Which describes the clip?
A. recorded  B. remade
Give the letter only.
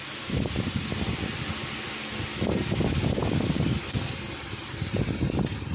A